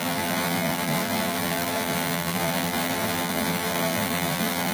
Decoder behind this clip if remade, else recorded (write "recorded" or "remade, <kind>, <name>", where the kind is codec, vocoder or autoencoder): remade, vocoder, BigVGAN v2